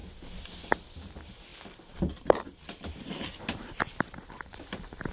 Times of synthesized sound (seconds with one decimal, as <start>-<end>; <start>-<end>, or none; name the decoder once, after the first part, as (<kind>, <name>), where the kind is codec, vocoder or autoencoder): 0.9-5.1 (vocoder, BigVGAN v2)